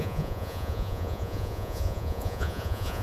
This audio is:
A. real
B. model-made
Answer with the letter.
B